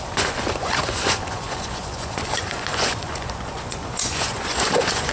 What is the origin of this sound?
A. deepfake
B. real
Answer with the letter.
A